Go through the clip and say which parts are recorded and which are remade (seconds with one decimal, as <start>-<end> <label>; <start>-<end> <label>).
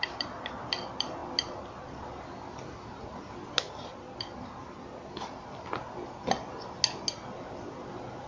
0.0-8.3 recorded